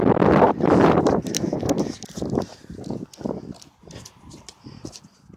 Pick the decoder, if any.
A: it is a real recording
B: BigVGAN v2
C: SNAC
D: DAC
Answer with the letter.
B